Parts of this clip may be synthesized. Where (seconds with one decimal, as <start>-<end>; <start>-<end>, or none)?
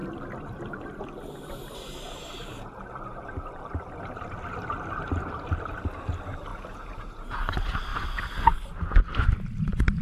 6.5-7.4